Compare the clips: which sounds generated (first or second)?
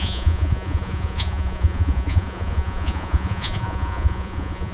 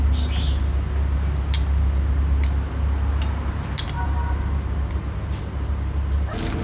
first